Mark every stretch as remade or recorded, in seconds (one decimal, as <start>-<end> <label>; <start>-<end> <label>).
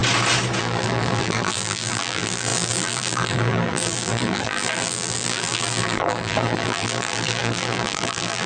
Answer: 0.0-0.6 recorded; 0.6-8.5 remade